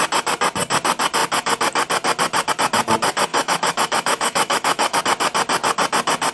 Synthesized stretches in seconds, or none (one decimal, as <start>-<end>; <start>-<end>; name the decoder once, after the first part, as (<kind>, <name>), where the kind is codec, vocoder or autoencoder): 3.3-5.0 (autoencoder, DAC-VAE)